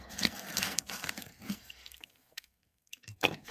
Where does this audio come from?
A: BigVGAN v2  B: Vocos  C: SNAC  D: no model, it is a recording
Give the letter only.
C